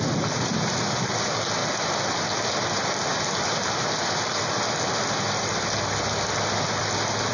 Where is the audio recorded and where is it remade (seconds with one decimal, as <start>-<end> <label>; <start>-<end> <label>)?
0.0-7.3 recorded